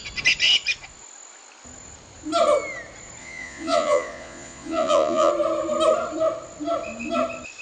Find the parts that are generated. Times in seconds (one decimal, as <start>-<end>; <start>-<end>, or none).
3.2-5.3